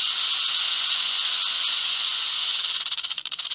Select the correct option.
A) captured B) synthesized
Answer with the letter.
B